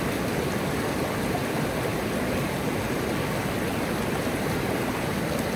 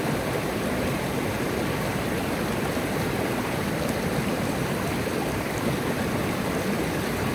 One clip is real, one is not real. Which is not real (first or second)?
second